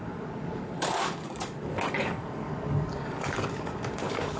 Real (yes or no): no